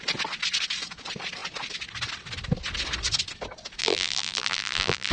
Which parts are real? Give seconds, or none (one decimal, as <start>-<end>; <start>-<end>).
0.0-3.8